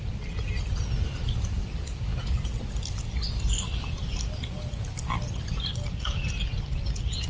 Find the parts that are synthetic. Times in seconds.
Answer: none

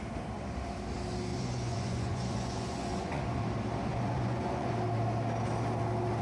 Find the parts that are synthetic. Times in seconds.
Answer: 1.3-3.4 (vocoder, Vocos); 3.9-4.7

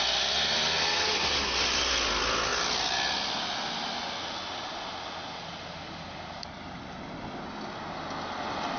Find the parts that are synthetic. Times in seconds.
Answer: none